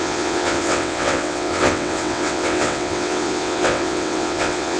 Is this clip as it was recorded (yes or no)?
no